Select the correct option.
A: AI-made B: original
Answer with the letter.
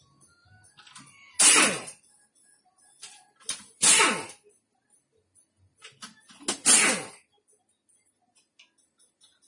B